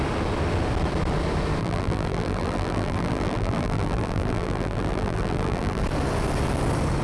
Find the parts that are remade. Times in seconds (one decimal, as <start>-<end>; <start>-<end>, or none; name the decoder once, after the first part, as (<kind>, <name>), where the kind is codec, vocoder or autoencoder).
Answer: 1.6-5.8 (vocoder, BigVGAN v2)